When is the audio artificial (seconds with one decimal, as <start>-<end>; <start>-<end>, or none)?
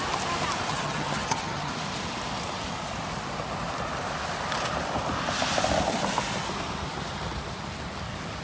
0.7-1.7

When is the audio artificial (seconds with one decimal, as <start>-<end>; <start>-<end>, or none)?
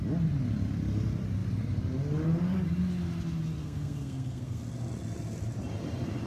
3.6-4.6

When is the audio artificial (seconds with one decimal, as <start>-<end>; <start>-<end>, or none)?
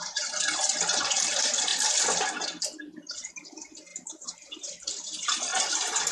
0.0-1.7; 2.8-6.1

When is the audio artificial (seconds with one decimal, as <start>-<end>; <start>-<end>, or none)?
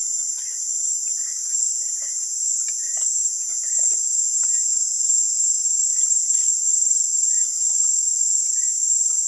1.4-5.5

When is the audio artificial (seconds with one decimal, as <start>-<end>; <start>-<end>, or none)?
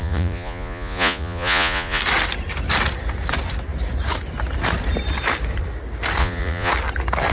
0.0-2.0; 6.2-6.7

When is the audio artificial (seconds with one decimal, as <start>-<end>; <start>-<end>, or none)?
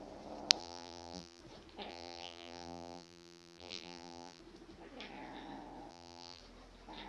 0.6-1.4; 1.9-4.4; 5.9-6.4